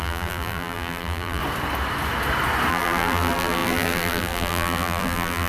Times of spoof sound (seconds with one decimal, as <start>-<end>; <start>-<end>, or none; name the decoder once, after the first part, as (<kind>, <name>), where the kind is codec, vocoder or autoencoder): 0.0-1.4 (vocoder, BigVGAN v2); 2.7-5.5